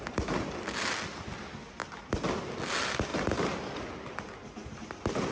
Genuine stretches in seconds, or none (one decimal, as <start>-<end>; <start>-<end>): 0.0-5.3